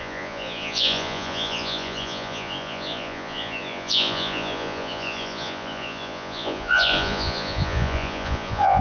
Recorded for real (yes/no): no